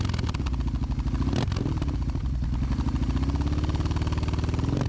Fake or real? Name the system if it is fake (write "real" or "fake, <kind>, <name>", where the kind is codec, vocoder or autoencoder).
real